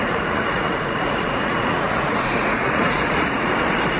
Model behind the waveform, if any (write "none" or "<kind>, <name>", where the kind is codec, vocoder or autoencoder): vocoder, Vocos